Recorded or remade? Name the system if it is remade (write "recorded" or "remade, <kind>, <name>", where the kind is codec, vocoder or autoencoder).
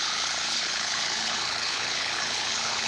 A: remade, codec, HILCodec